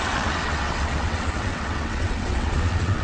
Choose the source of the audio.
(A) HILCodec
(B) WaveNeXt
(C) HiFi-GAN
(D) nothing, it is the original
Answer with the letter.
B